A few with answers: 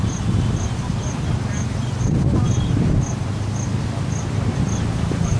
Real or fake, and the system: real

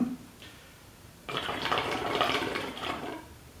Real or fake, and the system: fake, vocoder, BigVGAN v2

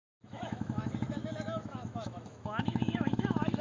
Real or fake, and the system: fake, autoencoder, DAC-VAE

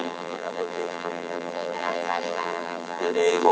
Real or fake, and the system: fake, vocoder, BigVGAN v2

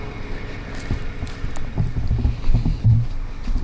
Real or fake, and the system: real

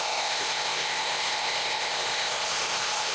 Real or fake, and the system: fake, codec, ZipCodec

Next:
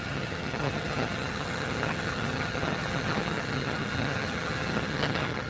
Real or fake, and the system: fake, vocoder, HiFi-GAN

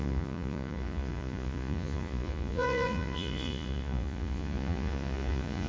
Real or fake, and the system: fake, vocoder, Vocos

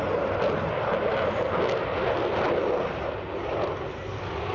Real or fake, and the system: real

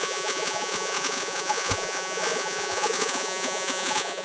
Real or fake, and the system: fake, vocoder, Vocos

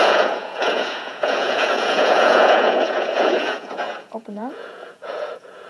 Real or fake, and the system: fake, vocoder, Vocos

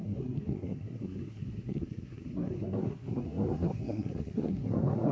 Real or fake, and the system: fake, codec, SNAC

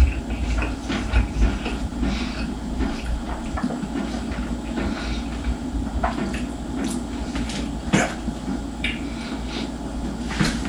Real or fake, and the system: real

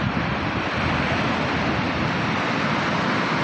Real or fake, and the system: real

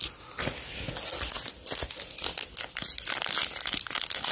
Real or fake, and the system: real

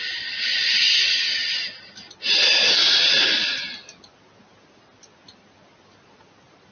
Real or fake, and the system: real